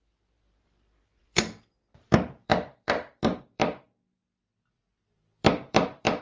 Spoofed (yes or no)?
yes